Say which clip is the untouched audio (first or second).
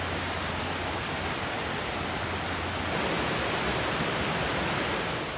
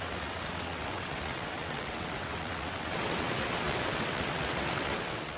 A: first